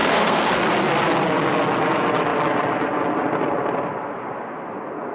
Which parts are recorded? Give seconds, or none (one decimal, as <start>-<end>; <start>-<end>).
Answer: 0.6-5.1